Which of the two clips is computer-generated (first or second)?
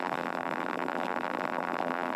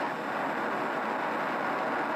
first